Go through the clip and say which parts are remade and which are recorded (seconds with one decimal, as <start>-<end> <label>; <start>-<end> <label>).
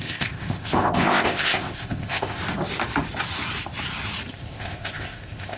0.0-2.4 remade; 2.4-4.3 recorded; 4.3-5.6 remade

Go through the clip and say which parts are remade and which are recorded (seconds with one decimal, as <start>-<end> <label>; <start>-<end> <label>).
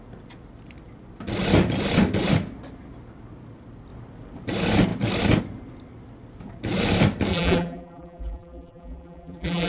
0.0-7.3 recorded; 7.3-9.7 remade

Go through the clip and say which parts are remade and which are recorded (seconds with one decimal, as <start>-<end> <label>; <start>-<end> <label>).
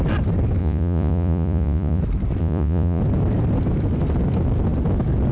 0.0-0.6 recorded; 0.6-2.0 remade; 2.0-2.4 recorded; 2.4-3.0 remade; 3.0-5.3 recorded